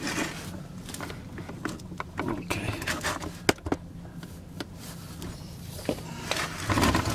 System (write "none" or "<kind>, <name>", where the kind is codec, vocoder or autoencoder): none